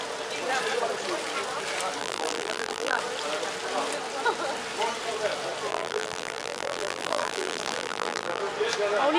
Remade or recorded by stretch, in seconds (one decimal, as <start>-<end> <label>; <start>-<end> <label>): 0.0-2.0 recorded; 2.0-3.0 remade; 3.0-5.7 recorded; 5.7-8.4 remade; 8.4-9.2 recorded

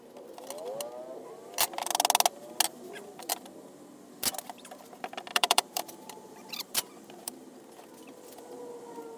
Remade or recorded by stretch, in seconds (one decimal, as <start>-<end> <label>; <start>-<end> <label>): 0.0-5.3 recorded; 5.3-7.9 remade; 7.9-9.2 recorded

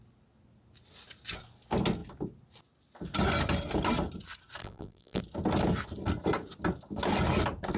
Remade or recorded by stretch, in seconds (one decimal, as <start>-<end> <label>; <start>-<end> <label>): 0.0-4.6 recorded; 4.6-5.2 remade; 5.2-7.8 recorded

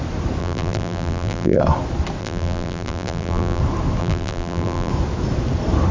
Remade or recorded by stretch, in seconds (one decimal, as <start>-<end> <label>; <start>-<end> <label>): 0.0-0.4 recorded; 0.4-1.6 remade; 1.6-2.2 recorded; 2.2-3.6 remade; 3.6-4.0 recorded; 4.0-4.9 remade; 4.9-5.9 recorded